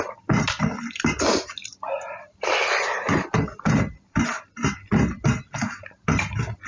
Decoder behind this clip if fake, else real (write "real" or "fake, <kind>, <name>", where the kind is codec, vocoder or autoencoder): real